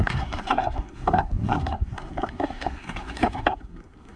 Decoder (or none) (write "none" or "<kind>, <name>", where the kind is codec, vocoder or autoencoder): codec, SNAC